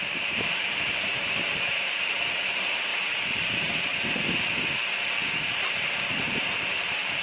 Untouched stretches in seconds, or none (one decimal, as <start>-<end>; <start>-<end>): 3.9-5.7